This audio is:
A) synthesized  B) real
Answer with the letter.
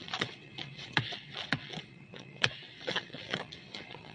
A